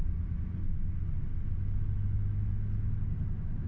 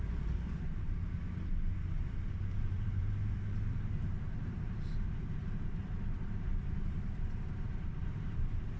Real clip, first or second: first